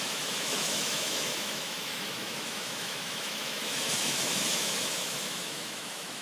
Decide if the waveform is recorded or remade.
remade